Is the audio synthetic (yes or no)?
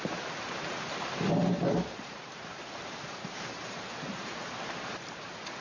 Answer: yes